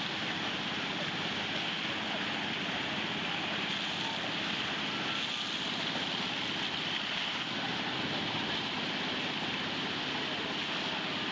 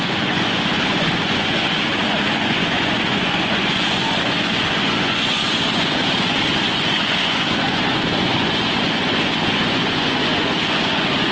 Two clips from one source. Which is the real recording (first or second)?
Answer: first